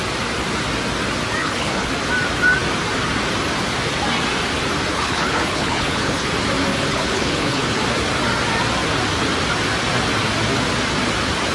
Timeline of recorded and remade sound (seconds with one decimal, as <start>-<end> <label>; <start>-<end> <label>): 0.0-1.4 recorded; 1.4-1.9 remade; 1.9-4.9 recorded; 4.9-6.3 remade; 6.3-6.7 recorded; 6.7-7.8 remade; 7.8-11.5 recorded